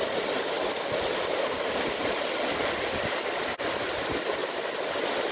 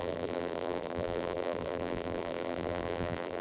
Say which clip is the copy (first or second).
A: second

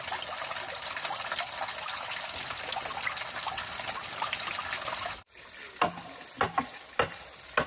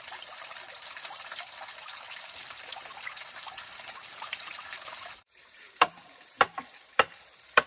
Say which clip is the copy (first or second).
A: second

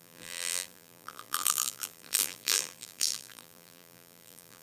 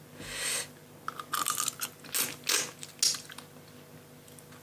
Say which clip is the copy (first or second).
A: first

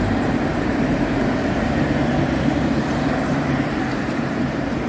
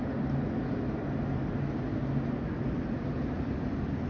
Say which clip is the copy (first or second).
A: first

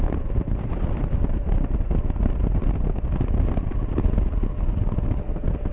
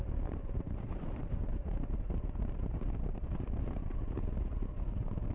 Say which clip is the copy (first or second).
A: second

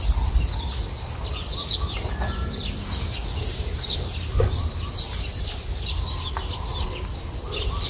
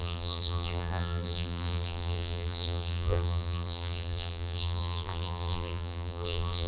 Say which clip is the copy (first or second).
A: second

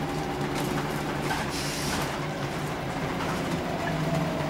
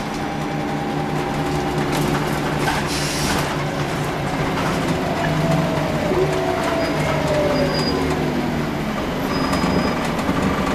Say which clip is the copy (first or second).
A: first